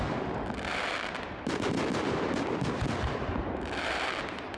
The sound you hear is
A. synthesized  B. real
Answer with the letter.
B